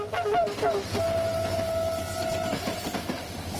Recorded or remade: recorded